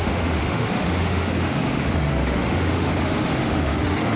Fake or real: fake